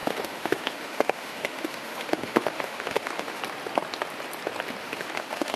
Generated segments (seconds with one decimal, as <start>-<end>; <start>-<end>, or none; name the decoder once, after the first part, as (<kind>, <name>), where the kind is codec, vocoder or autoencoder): 0.0-3.4 (autoencoder, DAC-VAE); 4.8-5.6